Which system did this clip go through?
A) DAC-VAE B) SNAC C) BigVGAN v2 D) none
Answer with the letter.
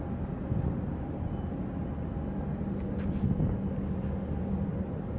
D